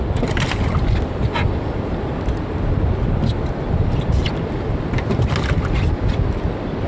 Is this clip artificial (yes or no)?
no